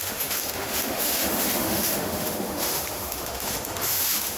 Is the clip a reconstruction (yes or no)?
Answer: yes